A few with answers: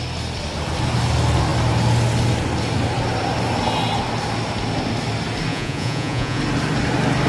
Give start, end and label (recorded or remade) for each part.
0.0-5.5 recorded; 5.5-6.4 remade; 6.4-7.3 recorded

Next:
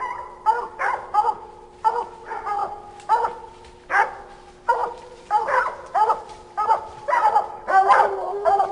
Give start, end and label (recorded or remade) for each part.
0.0-4.8 recorded; 4.8-8.7 remade

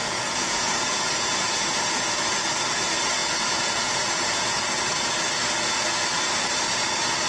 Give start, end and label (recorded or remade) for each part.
0.0-2.0 remade; 2.0-3.2 recorded; 3.2-5.1 remade; 5.1-7.3 recorded

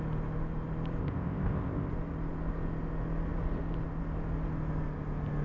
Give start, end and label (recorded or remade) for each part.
0.0-1.0 recorded; 1.0-1.9 remade; 1.9-5.4 recorded

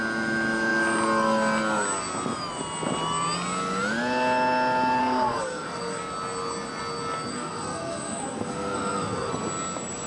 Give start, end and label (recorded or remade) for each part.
0.0-5.0 recorded; 5.0-6.0 remade; 6.0-7.3 recorded; 7.3-9.3 remade; 9.3-10.1 recorded

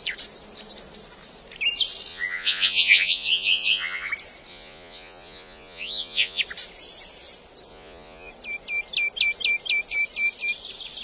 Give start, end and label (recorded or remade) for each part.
0.0-2.1 recorded; 2.1-4.1 remade; 4.1-4.5 recorded; 4.5-6.4 remade; 6.4-7.7 recorded; 7.7-8.3 remade; 8.3-11.0 recorded

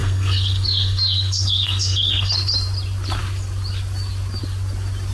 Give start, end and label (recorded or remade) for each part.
0.0-2.3 remade; 2.3-5.1 recorded

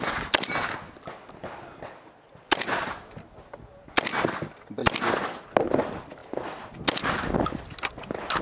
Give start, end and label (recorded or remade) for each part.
0.0-4.8 recorded; 4.8-5.4 remade; 5.4-8.4 recorded